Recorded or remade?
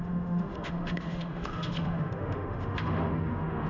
remade